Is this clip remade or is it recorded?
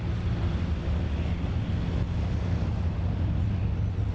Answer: recorded